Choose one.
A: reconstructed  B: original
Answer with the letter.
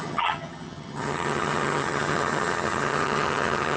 A